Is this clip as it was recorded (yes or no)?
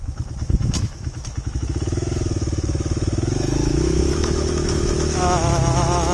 no